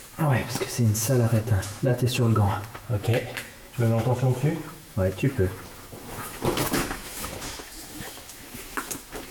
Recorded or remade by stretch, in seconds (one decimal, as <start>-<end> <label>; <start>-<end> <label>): 0.0-9.3 remade